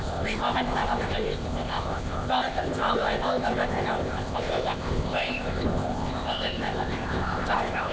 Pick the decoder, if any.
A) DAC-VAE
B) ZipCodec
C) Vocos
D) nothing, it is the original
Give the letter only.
B